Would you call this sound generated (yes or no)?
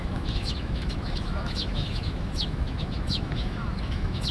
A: yes